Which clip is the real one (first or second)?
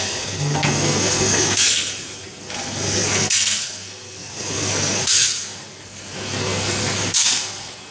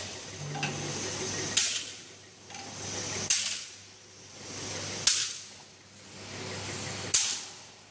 second